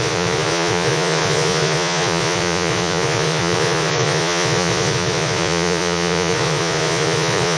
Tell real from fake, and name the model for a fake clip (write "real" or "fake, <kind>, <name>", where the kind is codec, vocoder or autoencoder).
fake, vocoder, Vocos